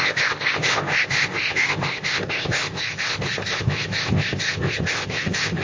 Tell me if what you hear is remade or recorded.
remade